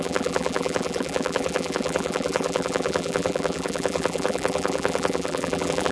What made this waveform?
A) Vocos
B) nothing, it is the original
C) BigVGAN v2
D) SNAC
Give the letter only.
C